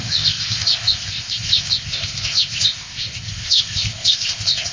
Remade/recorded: remade